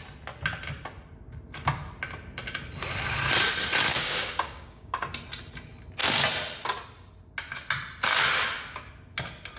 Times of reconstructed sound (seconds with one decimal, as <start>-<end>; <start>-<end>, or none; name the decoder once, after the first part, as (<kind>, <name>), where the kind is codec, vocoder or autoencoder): 3.9-4.9 (codec, DAC)